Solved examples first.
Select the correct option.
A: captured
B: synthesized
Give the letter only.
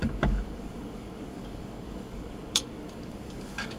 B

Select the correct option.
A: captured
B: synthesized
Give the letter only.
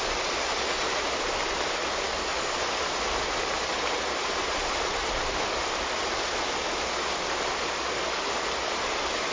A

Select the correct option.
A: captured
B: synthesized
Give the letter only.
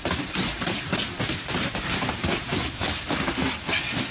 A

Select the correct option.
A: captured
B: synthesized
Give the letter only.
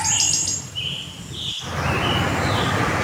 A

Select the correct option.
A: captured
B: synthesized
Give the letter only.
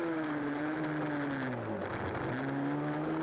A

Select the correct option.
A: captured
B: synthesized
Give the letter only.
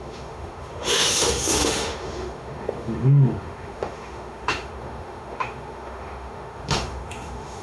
B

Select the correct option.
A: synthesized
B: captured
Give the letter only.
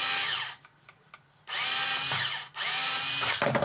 B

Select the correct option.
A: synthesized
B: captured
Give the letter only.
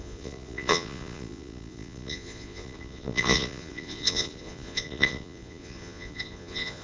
A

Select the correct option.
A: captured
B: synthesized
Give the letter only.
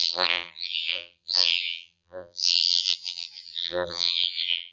B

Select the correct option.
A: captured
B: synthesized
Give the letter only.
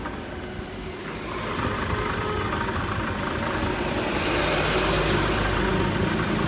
A